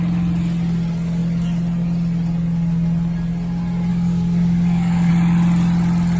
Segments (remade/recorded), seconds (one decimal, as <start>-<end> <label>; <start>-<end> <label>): 0.0-3.9 recorded; 3.9-5.1 remade; 5.1-6.2 recorded